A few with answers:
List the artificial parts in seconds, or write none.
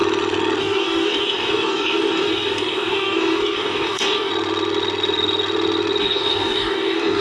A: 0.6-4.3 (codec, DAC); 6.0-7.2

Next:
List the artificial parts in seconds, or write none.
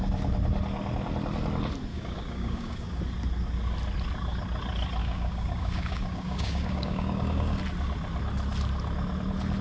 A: 1.9-3.0 (codec, DAC); 5.0-7.6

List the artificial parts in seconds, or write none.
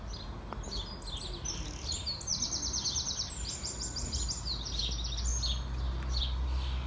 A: none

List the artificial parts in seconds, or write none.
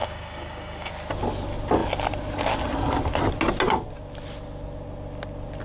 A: 0.0-0.9 (codec, DAC)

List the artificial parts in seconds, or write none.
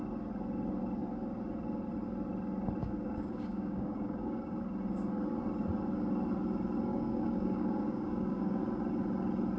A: 2.8-4.6 (codec, DAC); 6.9-8.6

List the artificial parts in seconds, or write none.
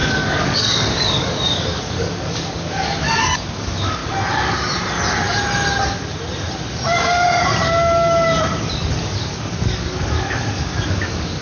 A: 0.0-4.0 (codec, DAC); 9.0-11.4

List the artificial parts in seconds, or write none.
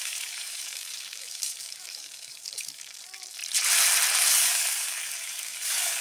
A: 0.0-3.4 (codec, DAC); 4.3-6.0